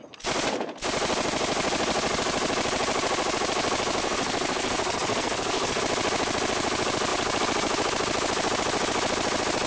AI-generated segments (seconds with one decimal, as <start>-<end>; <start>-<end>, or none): 4.0-5.8